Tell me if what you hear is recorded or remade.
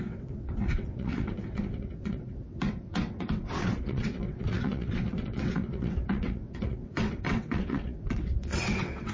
remade